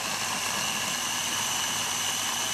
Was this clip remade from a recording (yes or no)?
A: no